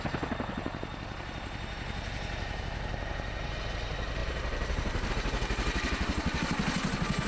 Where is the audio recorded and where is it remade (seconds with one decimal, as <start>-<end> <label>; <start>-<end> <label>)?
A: 0.0-4.2 recorded; 4.2-5.1 remade; 5.1-7.3 recorded

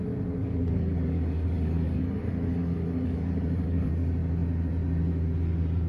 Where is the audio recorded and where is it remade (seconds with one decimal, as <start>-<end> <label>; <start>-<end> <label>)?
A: 0.0-0.4 recorded; 0.4-3.9 remade; 3.9-5.9 recorded